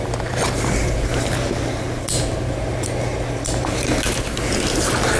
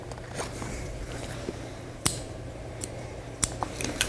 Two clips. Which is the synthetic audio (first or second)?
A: second